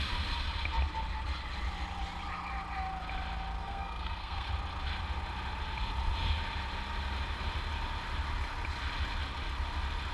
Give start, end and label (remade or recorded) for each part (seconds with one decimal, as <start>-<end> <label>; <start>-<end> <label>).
0.0-3.6 recorded; 3.6-4.5 remade; 4.5-10.1 recorded